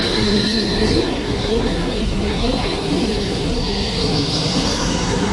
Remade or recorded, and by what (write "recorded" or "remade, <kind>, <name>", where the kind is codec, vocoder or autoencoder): remade, codec, SNAC